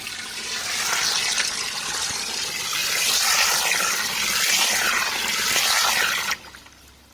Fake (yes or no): no